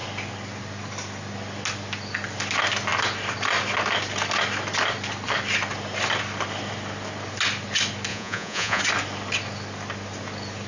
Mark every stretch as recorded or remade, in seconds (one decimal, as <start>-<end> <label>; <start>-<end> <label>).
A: 0.0-8.1 recorded; 8.1-8.8 remade; 8.8-10.7 recorded

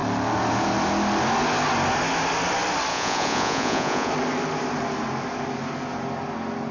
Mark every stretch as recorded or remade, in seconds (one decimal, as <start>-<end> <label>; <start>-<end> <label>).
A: 0.0-2.9 recorded; 2.9-4.1 remade; 4.1-6.7 recorded